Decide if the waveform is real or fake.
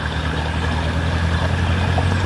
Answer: real